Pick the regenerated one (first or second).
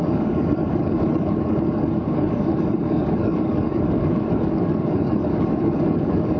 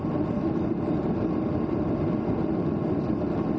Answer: first